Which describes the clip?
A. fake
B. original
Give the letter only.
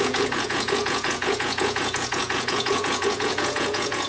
A